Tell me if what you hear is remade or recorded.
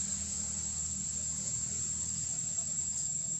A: remade